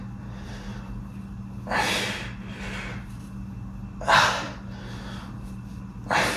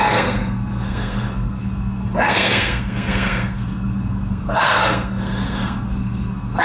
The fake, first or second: second